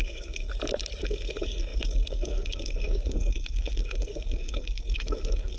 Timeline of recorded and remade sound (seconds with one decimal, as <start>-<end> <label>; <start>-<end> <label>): 0.0-0.5 remade; 0.5-1.0 recorded; 1.0-5.6 remade